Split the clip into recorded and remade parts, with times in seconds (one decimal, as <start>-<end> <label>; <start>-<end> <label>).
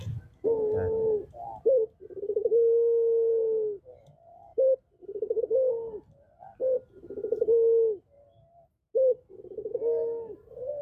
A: 0.0-10.8 recorded